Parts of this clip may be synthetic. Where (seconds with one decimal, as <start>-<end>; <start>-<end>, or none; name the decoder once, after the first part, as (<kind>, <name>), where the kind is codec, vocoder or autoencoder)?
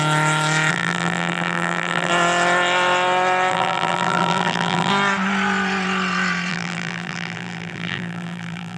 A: 0.7-2.1 (vocoder, BigVGAN v2); 3.5-4.9; 6.5-8.8